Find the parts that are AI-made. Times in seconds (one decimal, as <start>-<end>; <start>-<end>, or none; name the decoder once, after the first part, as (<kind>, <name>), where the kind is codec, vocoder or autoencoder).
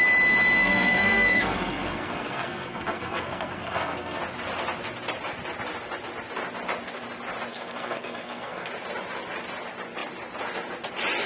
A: 0.6-4.2 (codec, SNAC); 7.5-8.7